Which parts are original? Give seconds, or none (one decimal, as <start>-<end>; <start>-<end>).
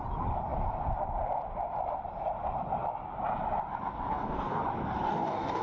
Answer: 0.0-4.1; 4.6-5.1